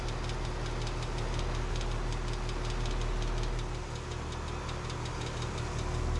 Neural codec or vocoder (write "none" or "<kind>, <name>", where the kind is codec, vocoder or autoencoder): none